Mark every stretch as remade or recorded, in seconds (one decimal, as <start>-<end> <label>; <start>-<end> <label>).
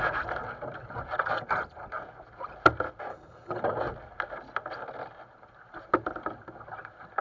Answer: 0.0-3.1 recorded; 3.1-3.6 remade; 3.6-7.2 recorded